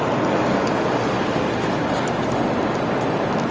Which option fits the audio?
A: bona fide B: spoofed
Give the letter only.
A